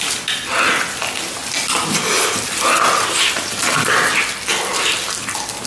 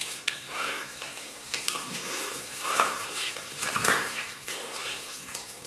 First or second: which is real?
first